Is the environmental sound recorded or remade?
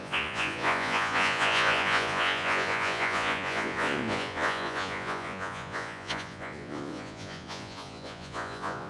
remade